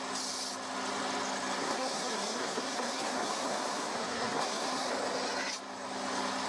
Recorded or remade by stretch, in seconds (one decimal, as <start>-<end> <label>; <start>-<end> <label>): 0.0-1.6 recorded; 1.6-4.9 remade; 4.9-6.5 recorded